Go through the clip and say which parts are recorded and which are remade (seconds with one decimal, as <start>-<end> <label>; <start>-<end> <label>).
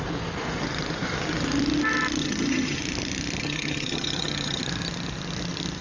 0.0-2.2 recorded; 2.2-2.8 remade; 2.8-3.4 recorded; 3.4-4.6 remade; 4.6-5.8 recorded